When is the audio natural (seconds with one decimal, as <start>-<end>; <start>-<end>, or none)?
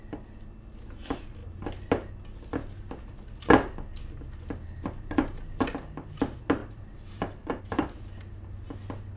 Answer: 0.0-6.6; 7.6-9.2